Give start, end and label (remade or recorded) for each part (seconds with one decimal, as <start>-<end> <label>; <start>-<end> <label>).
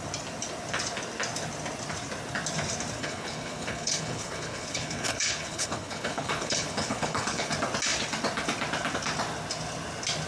0.0-3.0 recorded; 3.0-7.5 remade; 7.5-10.3 recorded